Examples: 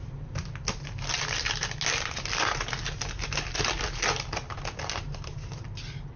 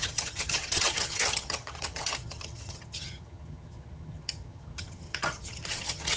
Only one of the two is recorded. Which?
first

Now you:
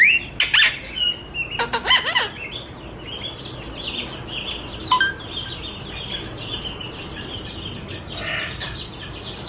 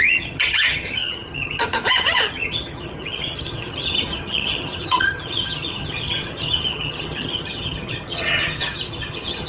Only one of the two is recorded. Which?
first